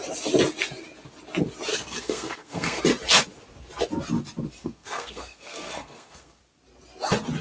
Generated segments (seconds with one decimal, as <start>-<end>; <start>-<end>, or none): 1.7-2.8; 4.6-6.4